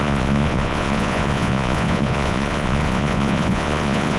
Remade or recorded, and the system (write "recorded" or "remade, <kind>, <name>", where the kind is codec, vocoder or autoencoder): remade, vocoder, Vocos